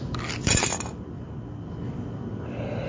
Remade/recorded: recorded